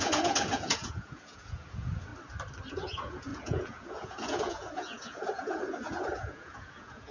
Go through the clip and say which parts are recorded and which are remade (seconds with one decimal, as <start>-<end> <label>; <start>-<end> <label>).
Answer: 0.0-2.1 remade; 2.1-2.7 recorded; 2.7-7.1 remade